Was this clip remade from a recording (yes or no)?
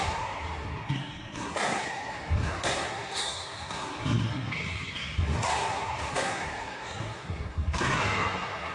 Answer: yes